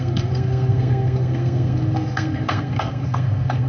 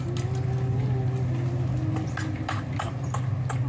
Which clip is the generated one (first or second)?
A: first